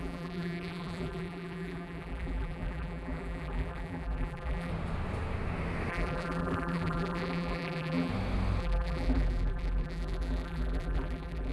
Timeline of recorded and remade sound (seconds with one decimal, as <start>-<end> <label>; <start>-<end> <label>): 0.0-4.7 remade; 4.7-5.9 recorded; 5.9-8.1 remade; 8.1-8.6 recorded; 8.6-11.5 remade